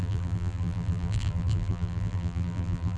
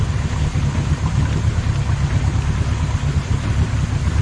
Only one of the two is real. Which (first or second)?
second